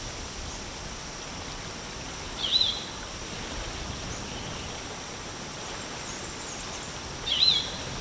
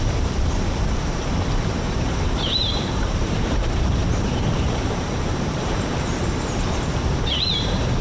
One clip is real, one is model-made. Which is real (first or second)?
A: first